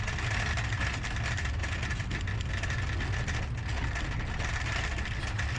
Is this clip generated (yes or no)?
no